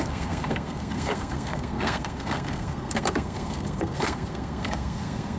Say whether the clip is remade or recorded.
remade